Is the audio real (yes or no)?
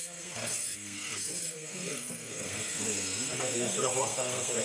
no